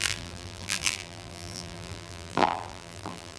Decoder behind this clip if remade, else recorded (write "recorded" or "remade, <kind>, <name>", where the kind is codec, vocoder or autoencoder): remade, vocoder, BigVGAN v2